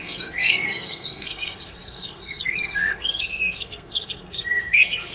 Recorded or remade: remade